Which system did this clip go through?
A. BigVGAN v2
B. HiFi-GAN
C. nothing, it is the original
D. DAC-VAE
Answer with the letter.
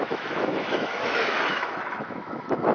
D